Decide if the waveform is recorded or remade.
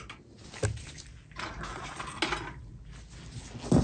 recorded